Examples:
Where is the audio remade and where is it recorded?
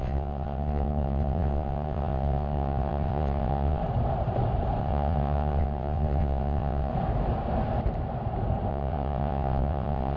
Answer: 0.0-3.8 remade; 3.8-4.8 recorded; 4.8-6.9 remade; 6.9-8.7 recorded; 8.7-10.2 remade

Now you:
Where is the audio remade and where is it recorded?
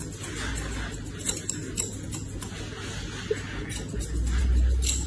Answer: 0.0-5.1 recorded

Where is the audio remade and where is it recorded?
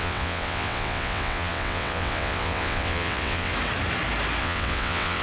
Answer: 0.0-3.5 remade; 3.5-4.4 recorded; 4.4-5.2 remade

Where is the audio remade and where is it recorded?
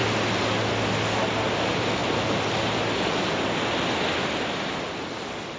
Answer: 0.0-5.6 recorded